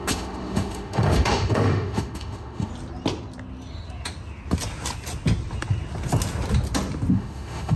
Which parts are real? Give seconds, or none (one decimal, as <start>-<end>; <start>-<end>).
2.7-7.1